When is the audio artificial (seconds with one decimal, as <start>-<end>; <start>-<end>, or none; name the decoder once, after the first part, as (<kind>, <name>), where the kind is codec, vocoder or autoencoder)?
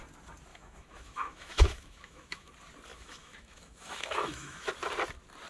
0.5-2.5 (autoencoder, DAC-VAE); 2.9-4.7